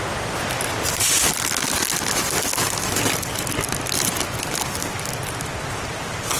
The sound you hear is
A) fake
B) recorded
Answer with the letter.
B